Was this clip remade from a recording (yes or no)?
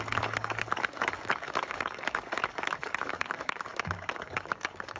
yes